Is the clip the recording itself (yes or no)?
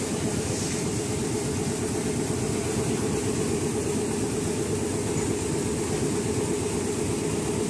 yes